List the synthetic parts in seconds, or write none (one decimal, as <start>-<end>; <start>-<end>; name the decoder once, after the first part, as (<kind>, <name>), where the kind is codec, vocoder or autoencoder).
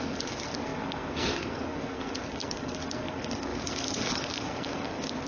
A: 0.0-5.3 (codec, SNAC)